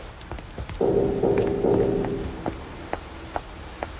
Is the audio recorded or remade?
recorded